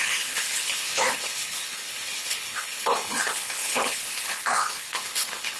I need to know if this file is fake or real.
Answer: fake